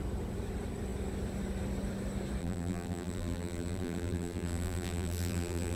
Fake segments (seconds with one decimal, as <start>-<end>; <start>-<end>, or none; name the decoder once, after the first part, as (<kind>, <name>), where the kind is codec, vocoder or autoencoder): 2.4-5.8 (vocoder, BigVGAN v2)